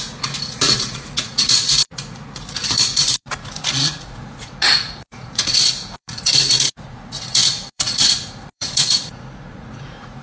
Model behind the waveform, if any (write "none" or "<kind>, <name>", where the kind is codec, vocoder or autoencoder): vocoder, Vocos